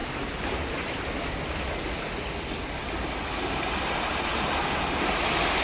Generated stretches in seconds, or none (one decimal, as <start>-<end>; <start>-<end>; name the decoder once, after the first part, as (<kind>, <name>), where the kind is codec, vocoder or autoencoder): none